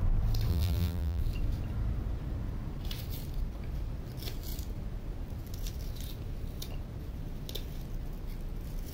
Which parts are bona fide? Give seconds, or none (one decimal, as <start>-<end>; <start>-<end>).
0.0-0.5; 1.2-8.9